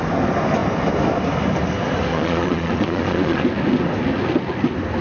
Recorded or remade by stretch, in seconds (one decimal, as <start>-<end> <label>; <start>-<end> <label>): 0.0-2.1 recorded; 2.1-3.4 remade; 3.4-5.0 recorded